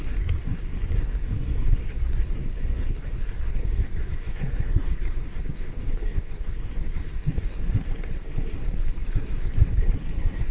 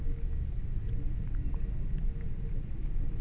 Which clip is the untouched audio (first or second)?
second